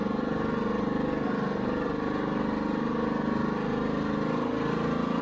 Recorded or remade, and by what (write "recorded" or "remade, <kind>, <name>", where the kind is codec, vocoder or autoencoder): recorded